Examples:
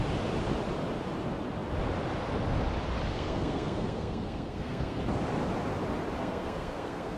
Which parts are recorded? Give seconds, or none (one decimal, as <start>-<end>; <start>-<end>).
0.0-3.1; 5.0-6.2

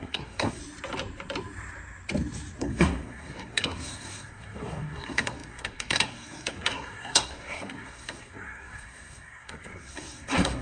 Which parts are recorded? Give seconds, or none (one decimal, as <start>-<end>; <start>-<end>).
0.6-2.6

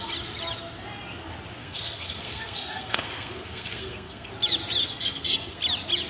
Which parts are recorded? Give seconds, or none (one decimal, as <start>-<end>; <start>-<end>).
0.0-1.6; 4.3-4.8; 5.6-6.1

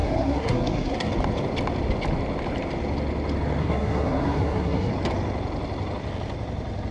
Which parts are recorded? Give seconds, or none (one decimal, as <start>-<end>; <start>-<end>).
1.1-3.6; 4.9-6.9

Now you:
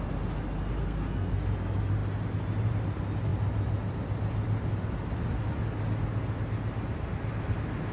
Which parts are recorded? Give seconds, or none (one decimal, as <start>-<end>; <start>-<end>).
0.0-0.8; 1.4-7.9